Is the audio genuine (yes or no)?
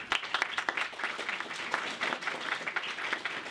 yes